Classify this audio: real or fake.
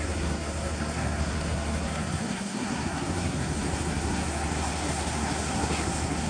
fake